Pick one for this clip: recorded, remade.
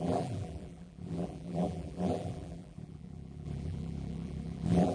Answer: remade